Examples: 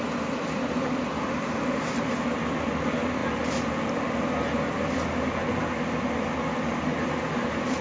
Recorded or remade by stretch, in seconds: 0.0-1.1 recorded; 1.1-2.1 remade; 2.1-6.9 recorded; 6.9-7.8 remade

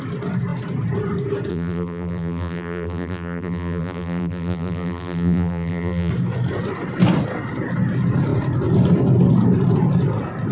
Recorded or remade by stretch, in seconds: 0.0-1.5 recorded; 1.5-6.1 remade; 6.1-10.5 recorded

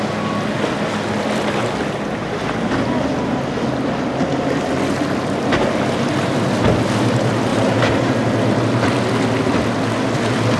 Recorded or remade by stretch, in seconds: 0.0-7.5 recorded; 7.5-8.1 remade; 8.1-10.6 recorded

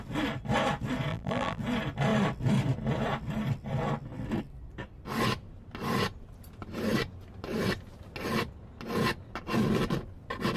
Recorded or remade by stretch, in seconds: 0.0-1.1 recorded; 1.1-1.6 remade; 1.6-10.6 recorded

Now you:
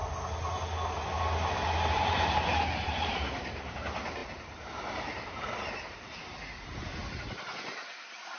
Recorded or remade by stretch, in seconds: 0.0-1.9 recorded; 1.9-8.4 remade

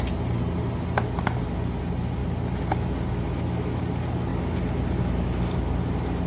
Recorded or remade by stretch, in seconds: 0.0-6.3 recorded

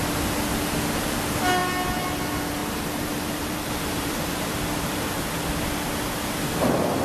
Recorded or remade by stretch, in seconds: 0.0-2.6 recorded; 2.6-5.2 remade; 5.2-7.0 recorded

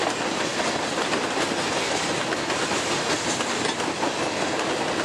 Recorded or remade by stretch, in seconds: 0.0-5.0 recorded